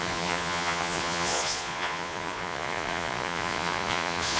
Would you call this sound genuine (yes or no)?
no